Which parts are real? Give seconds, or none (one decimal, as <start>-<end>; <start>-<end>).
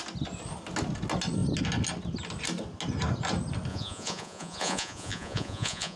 0.0-3.7